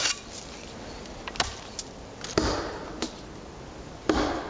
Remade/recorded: recorded